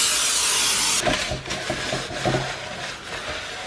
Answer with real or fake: real